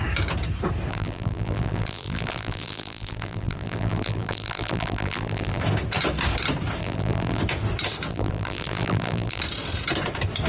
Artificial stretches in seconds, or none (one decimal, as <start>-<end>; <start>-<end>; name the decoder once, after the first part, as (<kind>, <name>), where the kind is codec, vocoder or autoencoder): 0.9-5.6 (vocoder, BigVGAN v2); 6.8-7.4; 8.1-9.4